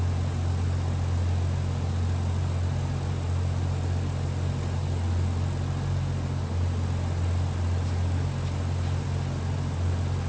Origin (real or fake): real